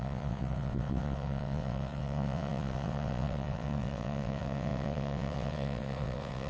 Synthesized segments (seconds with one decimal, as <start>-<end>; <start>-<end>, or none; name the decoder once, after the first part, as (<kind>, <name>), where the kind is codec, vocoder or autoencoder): 0.0-6.5 (vocoder, WaveNeXt)